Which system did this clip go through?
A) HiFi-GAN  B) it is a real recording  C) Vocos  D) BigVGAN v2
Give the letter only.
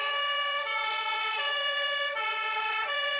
C